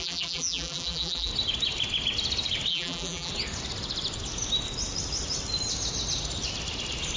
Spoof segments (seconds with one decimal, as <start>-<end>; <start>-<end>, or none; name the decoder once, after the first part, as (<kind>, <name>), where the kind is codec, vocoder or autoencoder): 0.0-1.3 (vocoder, BigVGAN v2); 2.7-3.3